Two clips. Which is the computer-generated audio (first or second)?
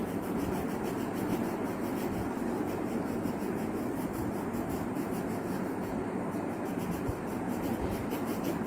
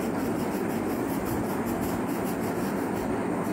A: first